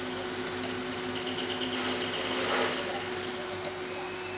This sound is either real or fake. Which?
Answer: real